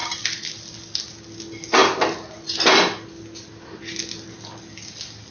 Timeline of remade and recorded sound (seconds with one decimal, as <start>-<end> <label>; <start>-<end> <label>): 0.0-1.4 remade; 1.4-5.3 recorded